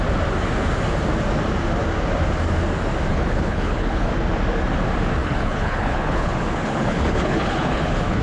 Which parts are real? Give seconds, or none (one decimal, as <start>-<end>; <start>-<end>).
0.0-3.1; 4.1-5.2